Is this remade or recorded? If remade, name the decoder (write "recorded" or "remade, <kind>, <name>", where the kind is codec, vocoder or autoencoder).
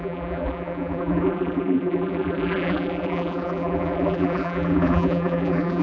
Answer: remade, vocoder, BigVGAN v2